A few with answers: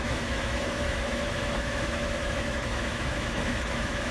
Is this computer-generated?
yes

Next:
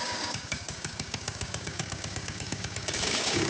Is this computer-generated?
yes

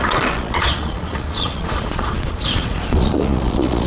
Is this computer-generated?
yes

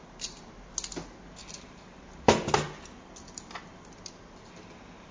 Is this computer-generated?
no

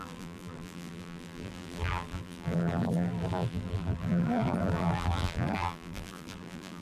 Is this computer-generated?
yes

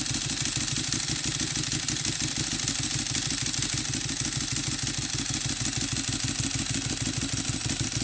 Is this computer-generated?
no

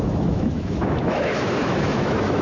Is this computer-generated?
yes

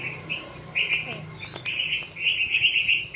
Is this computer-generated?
no